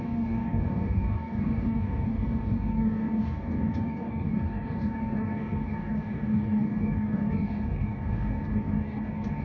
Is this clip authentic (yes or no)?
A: no